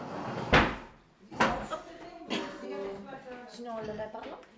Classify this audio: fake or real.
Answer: real